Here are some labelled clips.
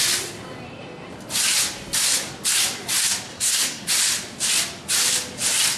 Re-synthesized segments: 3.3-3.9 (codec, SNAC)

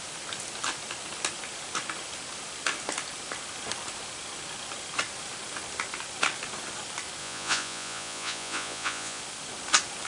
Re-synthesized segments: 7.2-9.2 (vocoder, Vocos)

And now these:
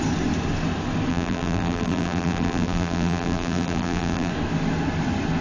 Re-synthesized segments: 1.1-4.3 (vocoder, BigVGAN v2)

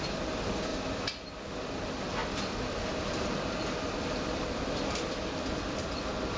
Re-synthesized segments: 0.7-1.5 (vocoder, BigVGAN v2); 2.2-6.0

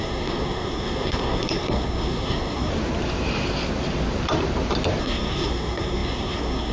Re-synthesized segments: 0.0-2.7 (codec, SNAC); 5.0-6.7